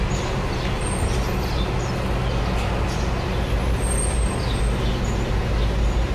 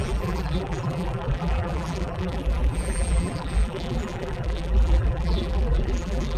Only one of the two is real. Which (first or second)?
first